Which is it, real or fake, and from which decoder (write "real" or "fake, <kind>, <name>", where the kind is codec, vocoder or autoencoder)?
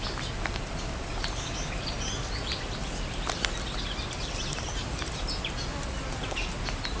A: real